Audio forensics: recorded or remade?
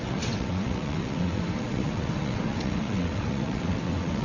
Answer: remade